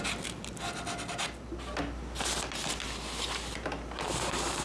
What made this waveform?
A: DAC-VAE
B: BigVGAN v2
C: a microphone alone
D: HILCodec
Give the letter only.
C